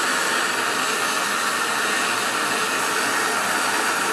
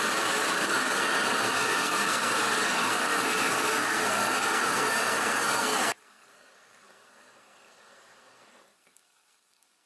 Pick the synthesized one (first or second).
second